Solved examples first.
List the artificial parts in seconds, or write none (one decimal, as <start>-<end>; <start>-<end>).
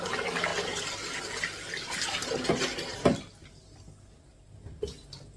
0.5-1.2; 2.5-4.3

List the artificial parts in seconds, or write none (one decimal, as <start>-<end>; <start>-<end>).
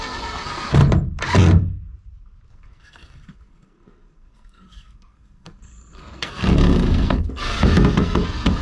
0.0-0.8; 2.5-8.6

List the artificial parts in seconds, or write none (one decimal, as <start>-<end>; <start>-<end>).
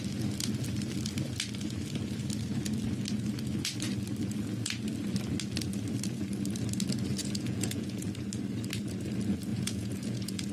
7.2-8.1; 9.5-10.5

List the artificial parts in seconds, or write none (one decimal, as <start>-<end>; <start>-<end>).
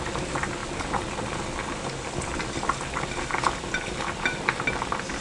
none